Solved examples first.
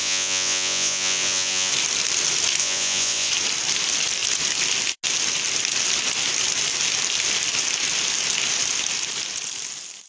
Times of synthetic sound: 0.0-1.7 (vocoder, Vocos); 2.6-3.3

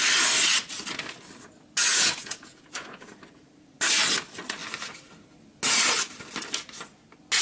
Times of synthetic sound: 1.9-3.1 (vocoder, Vocos)

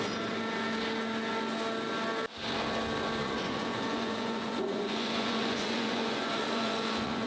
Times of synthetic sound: 3.2-7.3 (vocoder, Vocos)

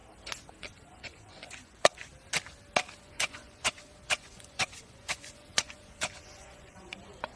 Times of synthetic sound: 0.6-2.1 (vocoder, Vocos); 3.0-7.4

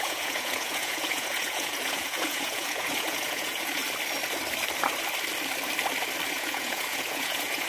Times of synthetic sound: 0.0-3.8 (vocoder, Vocos); 6.3-7.7